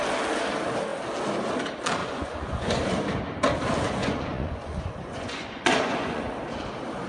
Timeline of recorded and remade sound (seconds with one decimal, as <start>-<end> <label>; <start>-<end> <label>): 0.0-2.0 recorded; 2.0-2.8 remade; 2.8-4.0 recorded; 4.0-6.2 remade; 6.2-7.1 recorded